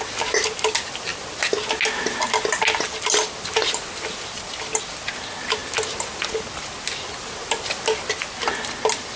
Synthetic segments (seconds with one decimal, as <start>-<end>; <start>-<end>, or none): none